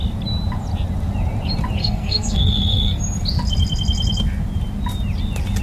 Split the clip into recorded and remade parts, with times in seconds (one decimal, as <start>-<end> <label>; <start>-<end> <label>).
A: 0.0-1.8 recorded; 1.8-3.0 remade; 3.0-5.6 recorded